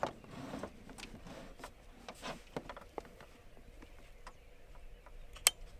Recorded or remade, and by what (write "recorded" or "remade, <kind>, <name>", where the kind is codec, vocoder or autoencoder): recorded